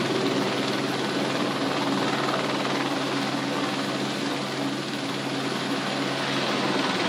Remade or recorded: recorded